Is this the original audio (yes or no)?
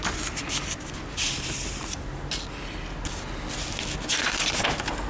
yes